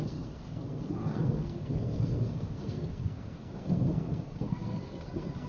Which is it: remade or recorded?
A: remade